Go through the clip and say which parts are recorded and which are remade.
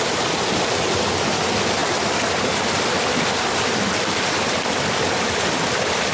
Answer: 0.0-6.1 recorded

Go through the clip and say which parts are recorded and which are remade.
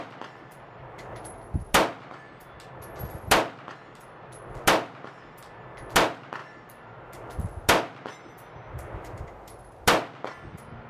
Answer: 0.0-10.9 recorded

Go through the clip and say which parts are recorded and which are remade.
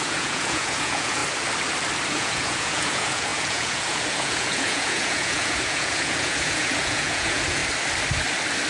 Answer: 0.0-1.2 remade; 1.2-2.1 recorded; 2.1-7.6 remade; 7.6-8.7 recorded